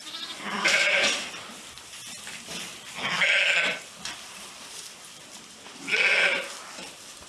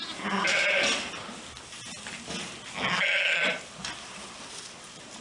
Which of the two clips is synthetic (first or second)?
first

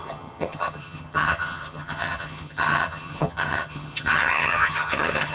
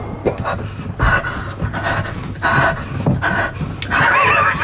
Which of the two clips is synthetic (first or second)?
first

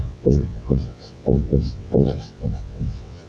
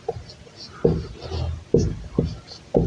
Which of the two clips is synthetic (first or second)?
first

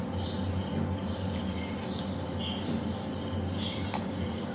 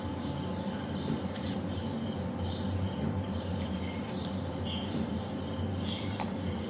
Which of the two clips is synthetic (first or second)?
second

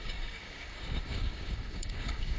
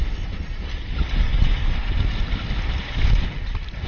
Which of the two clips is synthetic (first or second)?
first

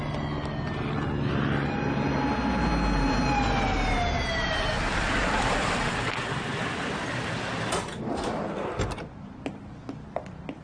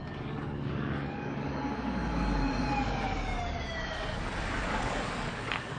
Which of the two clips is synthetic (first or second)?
second